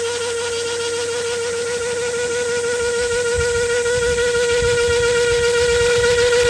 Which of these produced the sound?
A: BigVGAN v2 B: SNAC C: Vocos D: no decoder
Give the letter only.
D